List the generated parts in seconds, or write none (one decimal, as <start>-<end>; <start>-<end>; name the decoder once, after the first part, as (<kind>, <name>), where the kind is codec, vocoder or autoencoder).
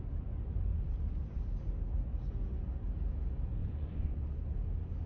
3.6-4.2 (vocoder, Vocos)